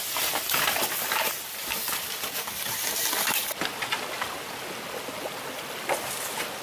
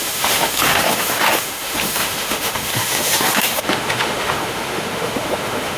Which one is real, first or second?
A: first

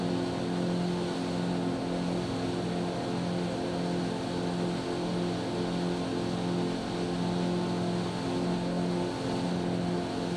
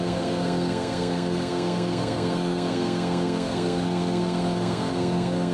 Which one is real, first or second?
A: first